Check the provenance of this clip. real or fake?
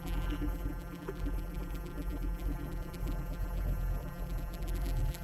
fake